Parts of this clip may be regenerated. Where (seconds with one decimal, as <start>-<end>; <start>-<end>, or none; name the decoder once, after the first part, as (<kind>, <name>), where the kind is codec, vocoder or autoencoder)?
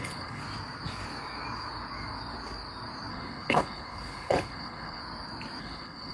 0.0-0.4 (codec, HILCodec); 3.1-5.0; 5.6-6.1